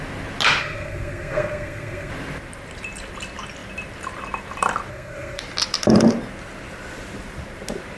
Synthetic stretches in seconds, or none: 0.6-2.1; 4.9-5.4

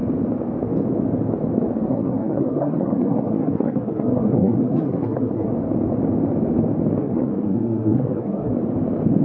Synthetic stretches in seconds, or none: 1.9-5.5; 7.0-8.5

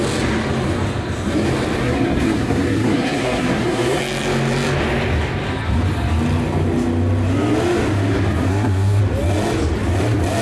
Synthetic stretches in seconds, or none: 1.8-4.0; 8.5-9.0